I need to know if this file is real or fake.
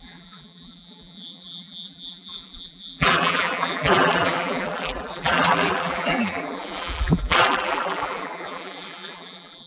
fake